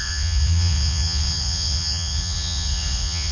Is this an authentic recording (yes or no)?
no